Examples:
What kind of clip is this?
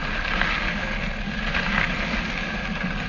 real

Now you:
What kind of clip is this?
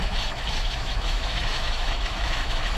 fake